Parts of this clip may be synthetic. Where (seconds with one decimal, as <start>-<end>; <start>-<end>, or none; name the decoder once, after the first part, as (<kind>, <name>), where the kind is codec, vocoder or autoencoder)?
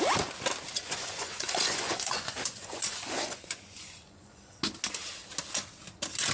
0.7-4.5 (vocoder, Vocos)